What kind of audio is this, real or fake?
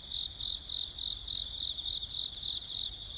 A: real